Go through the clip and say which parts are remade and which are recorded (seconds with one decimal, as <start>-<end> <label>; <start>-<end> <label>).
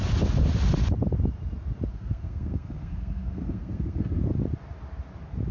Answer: 0.0-1.9 recorded; 1.9-4.2 remade; 4.2-5.5 recorded